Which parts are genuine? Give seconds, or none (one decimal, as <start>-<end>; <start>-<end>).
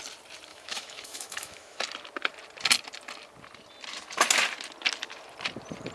0.0-0.5; 1.8-5.9